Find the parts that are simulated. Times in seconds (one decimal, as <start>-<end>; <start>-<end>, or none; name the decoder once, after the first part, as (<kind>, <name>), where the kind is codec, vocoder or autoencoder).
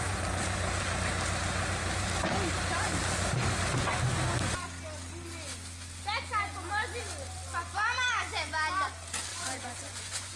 9.3-10.4 (vocoder, Vocos)